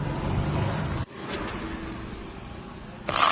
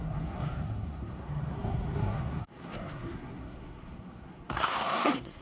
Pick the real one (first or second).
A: first